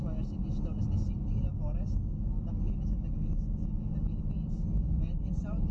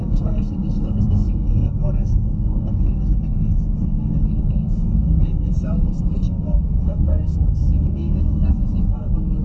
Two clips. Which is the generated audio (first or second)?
second